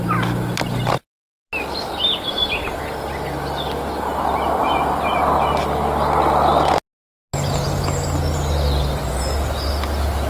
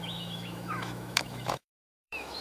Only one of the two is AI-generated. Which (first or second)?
second